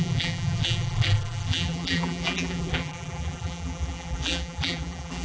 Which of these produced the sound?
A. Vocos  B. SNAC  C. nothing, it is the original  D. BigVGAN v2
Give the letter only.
D